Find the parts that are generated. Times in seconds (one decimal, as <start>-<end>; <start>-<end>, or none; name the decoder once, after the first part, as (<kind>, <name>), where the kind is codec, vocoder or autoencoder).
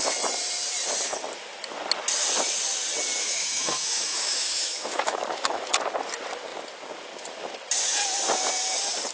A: 3.2-5.6 (autoencoder, DAC-VAE)